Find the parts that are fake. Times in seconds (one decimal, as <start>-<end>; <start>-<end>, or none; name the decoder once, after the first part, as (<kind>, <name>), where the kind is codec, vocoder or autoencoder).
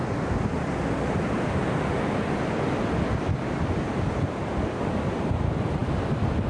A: none